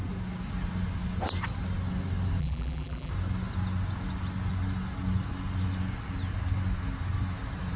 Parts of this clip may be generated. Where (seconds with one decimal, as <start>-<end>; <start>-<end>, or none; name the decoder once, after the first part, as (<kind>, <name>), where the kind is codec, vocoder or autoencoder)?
2.4-3.1 (vocoder, BigVGAN v2)